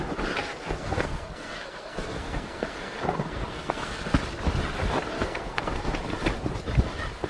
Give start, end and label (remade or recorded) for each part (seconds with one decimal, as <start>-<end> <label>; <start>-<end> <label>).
0.0-0.4 recorded; 0.4-4.2 remade; 4.2-5.1 recorded; 5.1-5.9 remade; 5.9-7.3 recorded